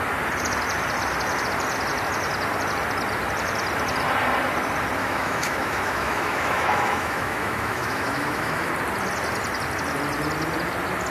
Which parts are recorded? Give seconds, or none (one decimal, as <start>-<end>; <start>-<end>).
0.0-5.0; 8.7-11.1